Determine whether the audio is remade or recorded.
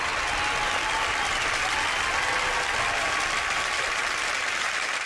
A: recorded